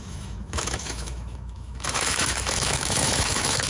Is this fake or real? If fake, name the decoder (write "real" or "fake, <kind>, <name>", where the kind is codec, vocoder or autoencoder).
fake, autoencoder, DAC-VAE